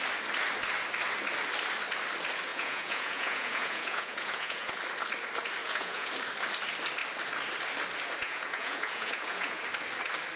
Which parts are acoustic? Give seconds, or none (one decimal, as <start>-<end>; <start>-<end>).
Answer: 0.0-2.5; 4.7-5.6; 6.1-8.2; 9.6-10.4